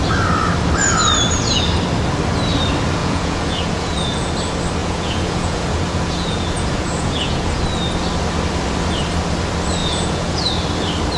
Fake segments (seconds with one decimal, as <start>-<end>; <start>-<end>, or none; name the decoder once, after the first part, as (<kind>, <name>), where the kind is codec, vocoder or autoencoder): 3.0-4.3 (vocoder, Vocos); 4.8-7.6; 9.8-10.5